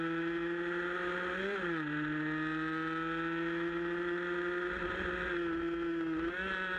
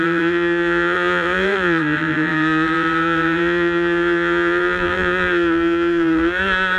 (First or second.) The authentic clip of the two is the first